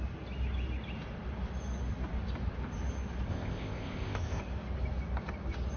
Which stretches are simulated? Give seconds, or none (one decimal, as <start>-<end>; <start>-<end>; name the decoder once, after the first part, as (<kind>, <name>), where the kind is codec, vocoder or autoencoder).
3.3-4.4 (codec, ZipCodec)

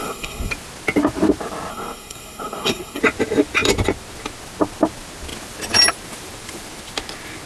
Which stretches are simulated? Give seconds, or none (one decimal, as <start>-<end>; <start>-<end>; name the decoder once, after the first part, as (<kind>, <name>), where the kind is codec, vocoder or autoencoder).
0.0-0.5 (codec, SNAC); 1.7-3.0

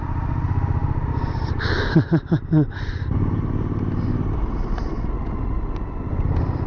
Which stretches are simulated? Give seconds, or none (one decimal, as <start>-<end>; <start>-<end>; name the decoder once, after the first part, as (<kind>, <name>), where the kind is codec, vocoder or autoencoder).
0.8-4.8 (vocoder, BigVGAN v2)

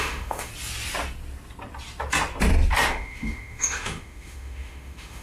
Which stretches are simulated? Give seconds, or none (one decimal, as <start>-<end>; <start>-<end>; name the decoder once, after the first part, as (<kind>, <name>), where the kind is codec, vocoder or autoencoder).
0.0-0.5 (autoencoder, DAC-VAE); 2.9-5.2

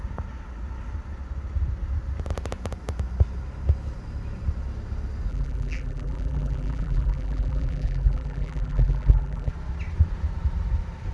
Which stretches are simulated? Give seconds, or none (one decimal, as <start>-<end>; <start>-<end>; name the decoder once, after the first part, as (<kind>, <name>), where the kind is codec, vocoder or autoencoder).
5.3-9.5 (vocoder, BigVGAN v2)

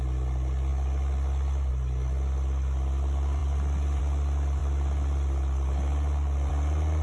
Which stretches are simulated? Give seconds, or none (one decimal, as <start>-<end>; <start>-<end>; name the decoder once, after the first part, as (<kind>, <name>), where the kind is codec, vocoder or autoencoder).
none

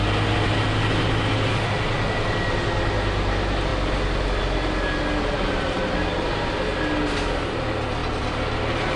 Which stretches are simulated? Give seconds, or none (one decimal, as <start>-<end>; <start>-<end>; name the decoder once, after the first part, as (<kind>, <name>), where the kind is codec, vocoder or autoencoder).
none

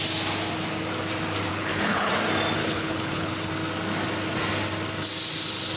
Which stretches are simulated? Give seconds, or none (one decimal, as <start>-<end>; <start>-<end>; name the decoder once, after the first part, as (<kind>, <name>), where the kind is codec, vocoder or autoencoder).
1.5-2.1 (codec, HILCodec); 2.6-3.5